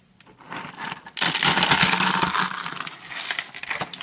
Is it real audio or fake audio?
real